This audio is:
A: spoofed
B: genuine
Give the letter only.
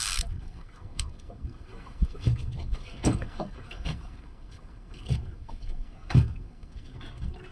A